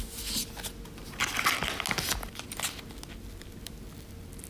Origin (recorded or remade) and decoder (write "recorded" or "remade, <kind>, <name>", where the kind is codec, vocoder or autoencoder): recorded